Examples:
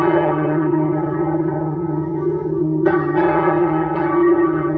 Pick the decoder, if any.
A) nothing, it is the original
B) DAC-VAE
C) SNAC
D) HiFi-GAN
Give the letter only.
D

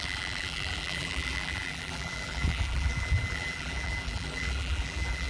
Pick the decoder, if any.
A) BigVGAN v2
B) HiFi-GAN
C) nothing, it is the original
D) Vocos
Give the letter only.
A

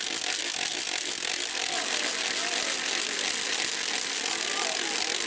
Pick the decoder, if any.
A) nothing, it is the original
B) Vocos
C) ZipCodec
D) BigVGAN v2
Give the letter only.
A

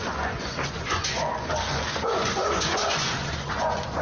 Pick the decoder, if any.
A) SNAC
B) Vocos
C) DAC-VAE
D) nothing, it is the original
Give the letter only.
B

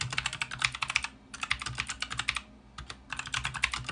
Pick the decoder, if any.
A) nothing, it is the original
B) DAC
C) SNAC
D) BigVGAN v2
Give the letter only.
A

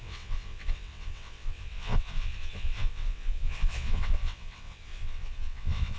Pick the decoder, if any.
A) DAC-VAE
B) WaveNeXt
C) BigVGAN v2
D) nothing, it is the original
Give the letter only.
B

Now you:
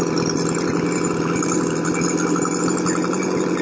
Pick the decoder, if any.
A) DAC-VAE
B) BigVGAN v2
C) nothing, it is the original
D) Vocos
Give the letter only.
C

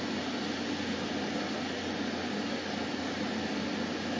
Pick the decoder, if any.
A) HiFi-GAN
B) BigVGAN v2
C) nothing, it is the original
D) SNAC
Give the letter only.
C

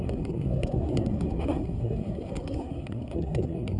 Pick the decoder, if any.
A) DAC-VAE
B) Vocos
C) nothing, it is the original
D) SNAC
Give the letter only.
D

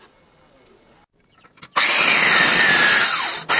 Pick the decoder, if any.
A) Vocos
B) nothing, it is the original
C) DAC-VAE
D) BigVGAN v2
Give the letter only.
B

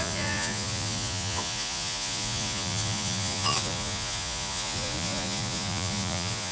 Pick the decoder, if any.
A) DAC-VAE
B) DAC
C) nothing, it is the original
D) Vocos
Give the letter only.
D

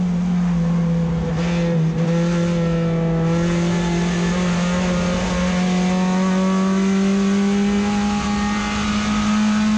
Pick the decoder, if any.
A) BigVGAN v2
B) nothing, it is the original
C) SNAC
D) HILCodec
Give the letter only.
B